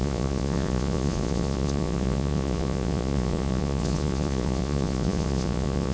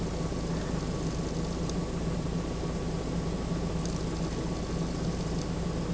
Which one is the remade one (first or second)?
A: first